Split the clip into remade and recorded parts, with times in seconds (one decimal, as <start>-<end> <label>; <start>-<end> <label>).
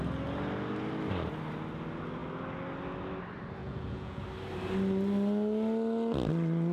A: 0.0-3.6 recorded; 3.6-4.2 remade; 4.2-6.7 recorded